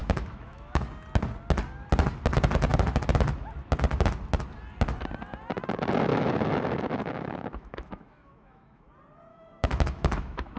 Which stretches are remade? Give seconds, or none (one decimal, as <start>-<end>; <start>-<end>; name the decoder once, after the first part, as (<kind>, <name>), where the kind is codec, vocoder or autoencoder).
0.0-0.8 (autoencoder, DAC-VAE); 6.1-8.9; 9.3-10.6